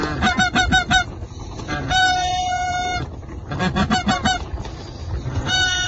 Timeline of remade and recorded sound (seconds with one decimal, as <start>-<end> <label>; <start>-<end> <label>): 0.0-1.4 recorded; 1.4-2.9 remade; 2.9-5.0 recorded; 5.0-5.9 remade